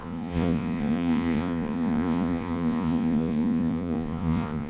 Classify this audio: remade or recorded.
remade